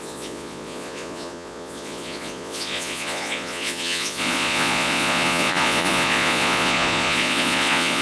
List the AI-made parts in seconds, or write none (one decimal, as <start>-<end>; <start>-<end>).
0.0-8.0